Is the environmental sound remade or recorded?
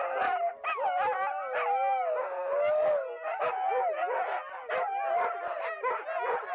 recorded